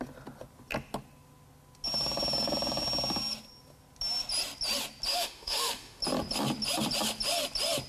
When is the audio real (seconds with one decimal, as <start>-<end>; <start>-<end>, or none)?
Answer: 0.0-5.1; 6.0-7.9